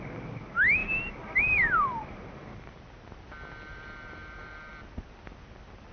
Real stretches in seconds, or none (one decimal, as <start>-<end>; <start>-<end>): 0.0-0.8; 2.8-3.7; 4.7-5.9